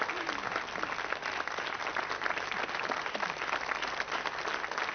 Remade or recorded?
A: recorded